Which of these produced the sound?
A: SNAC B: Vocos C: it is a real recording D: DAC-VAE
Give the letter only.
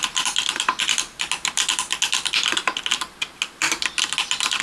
C